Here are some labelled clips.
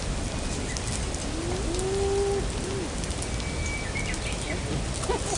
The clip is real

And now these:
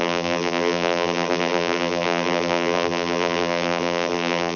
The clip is fake